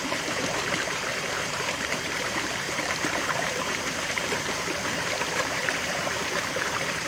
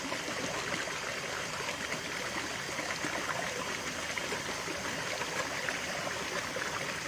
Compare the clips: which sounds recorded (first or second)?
second